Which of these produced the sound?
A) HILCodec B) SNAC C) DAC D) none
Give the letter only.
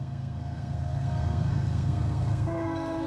B